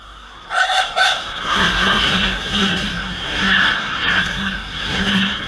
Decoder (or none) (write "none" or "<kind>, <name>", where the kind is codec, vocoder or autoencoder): codec, SNAC